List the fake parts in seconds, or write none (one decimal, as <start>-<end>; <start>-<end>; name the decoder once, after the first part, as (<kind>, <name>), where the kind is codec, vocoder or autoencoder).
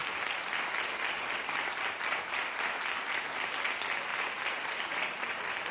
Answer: 2.1-2.8 (vocoder, BigVGAN v2); 4.1-5.7